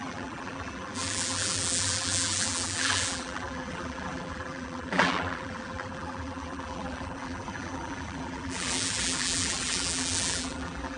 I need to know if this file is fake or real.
fake